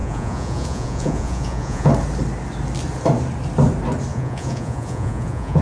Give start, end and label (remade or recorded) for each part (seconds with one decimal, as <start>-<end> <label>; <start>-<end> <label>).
0.0-1.9 remade; 1.9-4.1 recorded; 4.1-5.6 remade